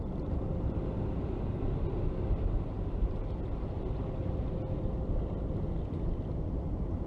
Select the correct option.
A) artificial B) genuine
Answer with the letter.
B